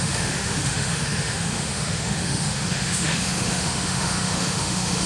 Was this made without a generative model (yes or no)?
no